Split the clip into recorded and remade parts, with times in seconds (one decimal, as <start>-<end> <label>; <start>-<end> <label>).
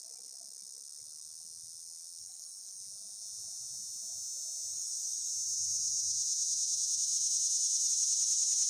0.0-2.2 recorded; 2.2-2.8 remade; 2.8-4.7 recorded; 4.7-5.3 remade; 5.3-8.7 recorded